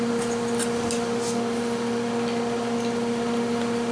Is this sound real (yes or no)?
yes